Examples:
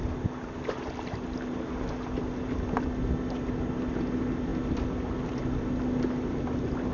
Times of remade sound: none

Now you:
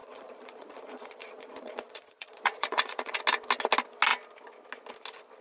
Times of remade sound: 0.0-3.2 (vocoder, Vocos)

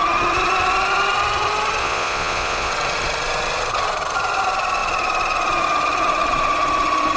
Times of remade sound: 1.8-2.7 (vocoder, Vocos)